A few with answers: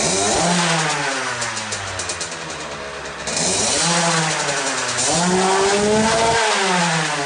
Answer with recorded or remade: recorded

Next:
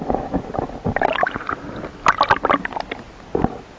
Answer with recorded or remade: recorded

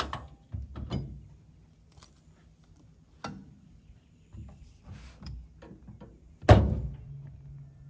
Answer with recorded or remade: recorded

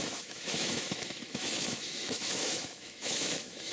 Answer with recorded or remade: remade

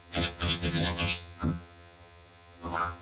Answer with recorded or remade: remade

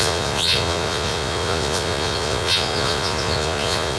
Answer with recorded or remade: remade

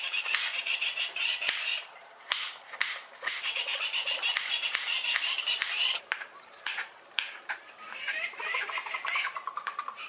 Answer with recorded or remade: remade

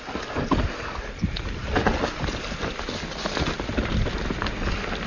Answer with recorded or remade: recorded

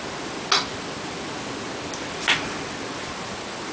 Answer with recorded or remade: recorded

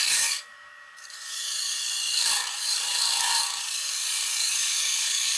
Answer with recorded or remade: remade